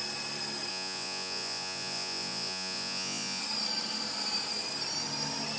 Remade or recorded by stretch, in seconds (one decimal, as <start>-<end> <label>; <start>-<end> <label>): 0.0-0.7 recorded; 0.7-3.4 remade; 3.4-5.6 recorded